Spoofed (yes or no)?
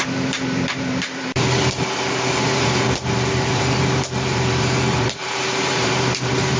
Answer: yes